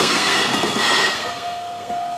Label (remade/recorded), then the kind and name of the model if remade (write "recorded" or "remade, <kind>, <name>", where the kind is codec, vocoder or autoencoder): remade, codec, SNAC